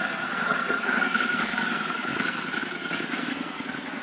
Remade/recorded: remade